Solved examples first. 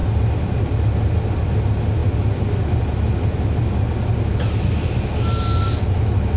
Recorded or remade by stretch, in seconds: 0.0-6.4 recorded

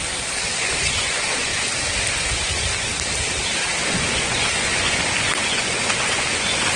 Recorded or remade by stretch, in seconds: 0.0-1.5 remade; 1.5-2.1 recorded; 2.1-2.9 remade; 2.9-3.8 recorded; 3.8-6.8 remade

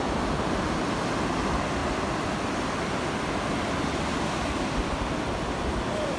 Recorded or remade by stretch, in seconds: 0.0-6.2 recorded

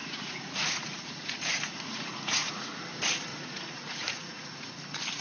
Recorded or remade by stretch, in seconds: 0.0-2.8 remade; 2.8-3.3 recorded; 3.3-4.7 remade; 4.7-5.2 recorded

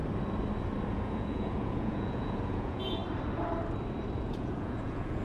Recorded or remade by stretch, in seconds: 0.0-0.9 recorded; 0.9-3.0 remade; 3.0-4.3 recorded; 4.3-5.2 remade

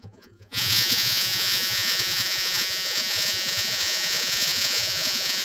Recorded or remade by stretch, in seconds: 0.0-5.4 remade

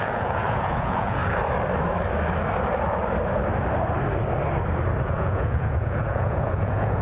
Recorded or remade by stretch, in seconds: 0.0-1.2 remade; 1.2-5.0 recorded; 5.0-7.0 remade

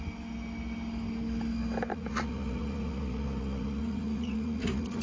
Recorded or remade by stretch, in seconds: 0.0-1.9 recorded; 1.9-5.0 remade